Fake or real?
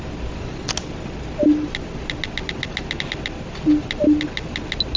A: real